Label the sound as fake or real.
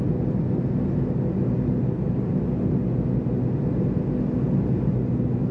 real